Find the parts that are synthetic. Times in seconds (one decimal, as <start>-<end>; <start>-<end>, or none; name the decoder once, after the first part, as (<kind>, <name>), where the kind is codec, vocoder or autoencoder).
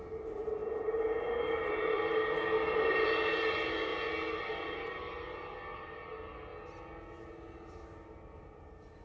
0.0-3.9 (vocoder, BigVGAN v2); 4.4-6.5; 7.2-9.0